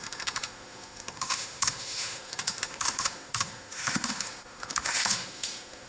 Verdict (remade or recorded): remade